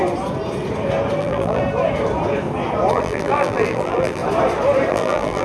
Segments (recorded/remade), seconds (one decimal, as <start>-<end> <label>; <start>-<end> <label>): 0.0-1.2 recorded; 1.2-1.6 remade; 1.6-2.9 recorded; 2.9-4.2 remade; 4.2-4.9 recorded; 4.9-5.4 remade

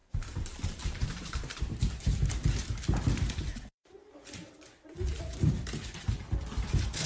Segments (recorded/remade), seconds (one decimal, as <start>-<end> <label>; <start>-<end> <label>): 0.0-1.9 remade; 1.9-5.1 recorded; 5.1-5.6 remade; 5.6-7.1 recorded

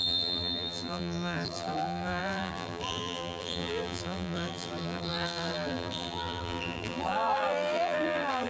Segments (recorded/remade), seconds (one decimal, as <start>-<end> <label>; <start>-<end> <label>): 0.0-8.5 remade

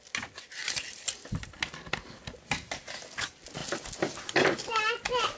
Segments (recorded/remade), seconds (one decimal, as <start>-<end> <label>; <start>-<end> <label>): 0.0-0.6 recorded; 0.6-1.5 remade; 1.5-5.4 recorded